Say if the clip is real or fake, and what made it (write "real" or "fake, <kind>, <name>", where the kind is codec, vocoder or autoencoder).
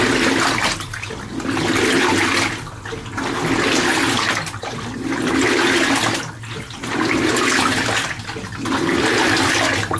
real